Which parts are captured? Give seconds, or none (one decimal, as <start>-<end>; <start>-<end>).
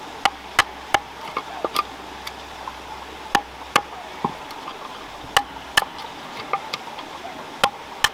0.0-8.1